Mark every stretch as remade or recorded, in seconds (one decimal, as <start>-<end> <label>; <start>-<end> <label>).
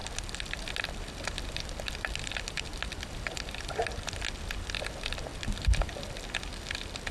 0.0-4.1 remade; 4.1-5.3 recorded; 5.3-5.9 remade; 5.9-7.1 recorded